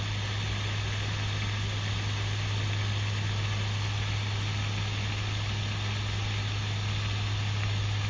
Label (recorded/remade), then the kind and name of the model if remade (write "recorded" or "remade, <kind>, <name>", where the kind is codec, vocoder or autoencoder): recorded